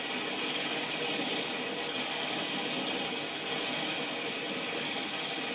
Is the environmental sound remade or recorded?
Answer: recorded